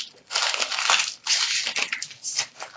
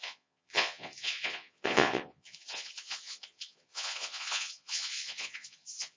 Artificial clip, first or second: second